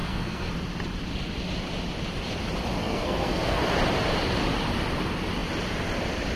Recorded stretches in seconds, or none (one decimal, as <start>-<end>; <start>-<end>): 0.5-2.8; 3.6-6.3